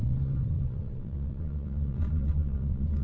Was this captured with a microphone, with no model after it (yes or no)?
no